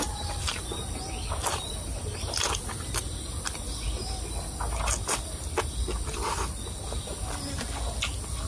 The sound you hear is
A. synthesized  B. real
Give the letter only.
B